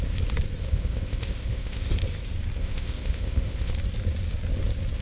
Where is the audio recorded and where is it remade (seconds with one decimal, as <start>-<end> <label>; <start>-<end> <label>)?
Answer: 0.0-0.6 recorded; 0.6-1.9 remade; 1.9-2.6 recorded; 2.6-3.7 remade; 3.7-5.0 recorded